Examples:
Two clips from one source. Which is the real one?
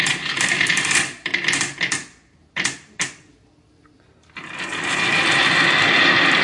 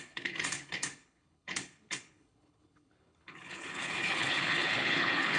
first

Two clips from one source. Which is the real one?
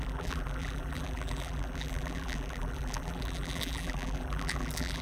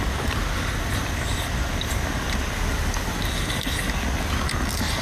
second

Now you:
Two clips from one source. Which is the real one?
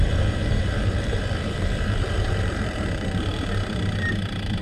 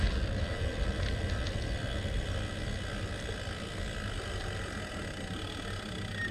second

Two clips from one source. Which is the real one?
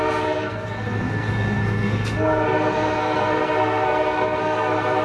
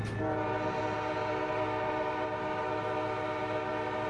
second